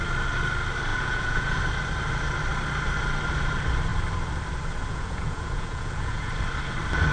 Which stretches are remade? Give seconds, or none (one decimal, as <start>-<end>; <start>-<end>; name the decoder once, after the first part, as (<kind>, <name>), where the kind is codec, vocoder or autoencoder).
0.9-1.6 (vocoder, Vocos); 4.9-6.3